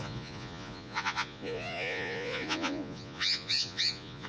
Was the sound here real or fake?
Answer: fake